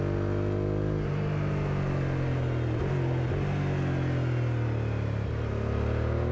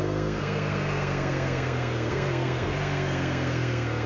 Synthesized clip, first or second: second